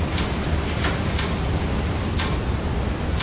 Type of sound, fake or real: fake